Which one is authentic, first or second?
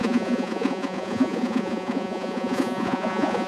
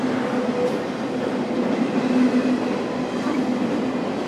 second